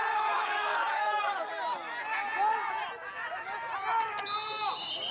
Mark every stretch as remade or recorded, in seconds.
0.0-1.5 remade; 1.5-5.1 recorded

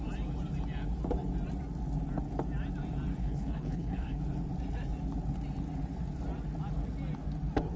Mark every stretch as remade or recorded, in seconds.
0.0-3.2 recorded; 3.2-4.2 remade; 4.2-7.8 recorded

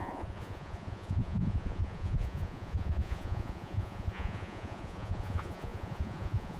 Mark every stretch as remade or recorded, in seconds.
0.0-6.6 remade

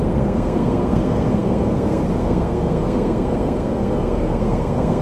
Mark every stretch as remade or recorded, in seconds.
0.0-5.0 remade